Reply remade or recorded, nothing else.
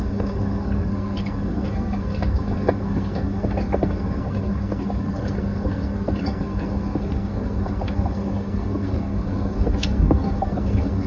remade